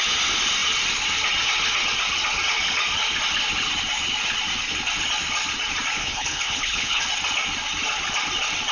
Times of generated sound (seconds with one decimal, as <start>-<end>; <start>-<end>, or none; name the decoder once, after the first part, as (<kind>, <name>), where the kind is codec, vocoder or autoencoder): 6.0-7.0 (codec, HILCodec)